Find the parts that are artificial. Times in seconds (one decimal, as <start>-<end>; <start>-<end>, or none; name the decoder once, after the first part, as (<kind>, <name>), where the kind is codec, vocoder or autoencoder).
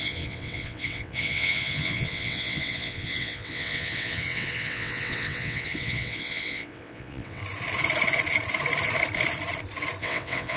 0.0-7.4 (vocoder, WaveNeXt); 10.0-10.6